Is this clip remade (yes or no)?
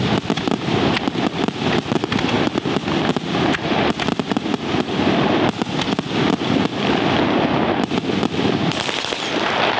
no